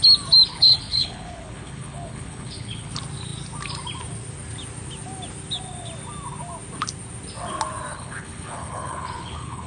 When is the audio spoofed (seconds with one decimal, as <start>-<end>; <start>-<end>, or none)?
0.5-2.9; 7.9-9.7